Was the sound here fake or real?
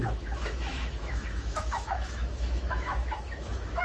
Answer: fake